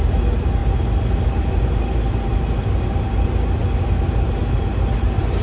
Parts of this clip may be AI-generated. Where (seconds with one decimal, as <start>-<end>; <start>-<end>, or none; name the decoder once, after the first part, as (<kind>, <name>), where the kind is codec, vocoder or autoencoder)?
none